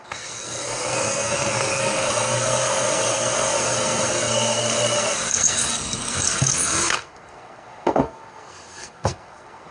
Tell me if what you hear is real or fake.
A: fake